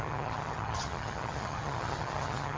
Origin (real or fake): fake